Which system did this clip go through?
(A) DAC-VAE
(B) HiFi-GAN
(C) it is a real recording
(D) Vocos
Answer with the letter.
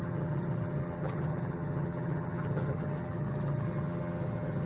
B